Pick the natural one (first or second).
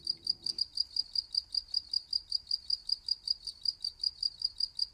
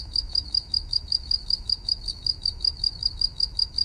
first